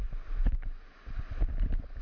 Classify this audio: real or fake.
real